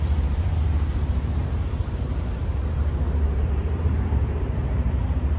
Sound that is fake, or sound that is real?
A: fake